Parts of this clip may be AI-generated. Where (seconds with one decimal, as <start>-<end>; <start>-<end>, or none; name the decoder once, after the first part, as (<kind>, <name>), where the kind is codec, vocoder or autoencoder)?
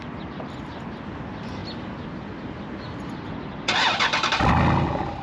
none